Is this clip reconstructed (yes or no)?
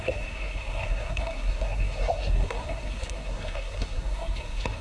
yes